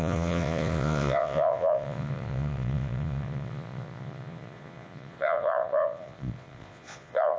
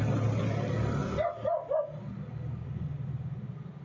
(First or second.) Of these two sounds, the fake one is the first